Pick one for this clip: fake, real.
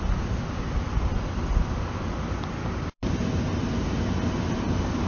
real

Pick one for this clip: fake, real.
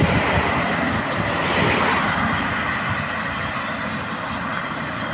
real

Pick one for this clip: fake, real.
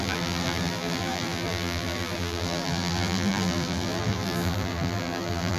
fake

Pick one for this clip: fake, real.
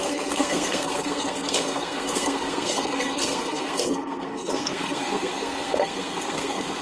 fake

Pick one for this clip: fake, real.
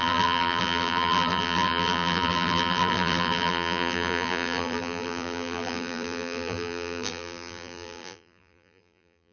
fake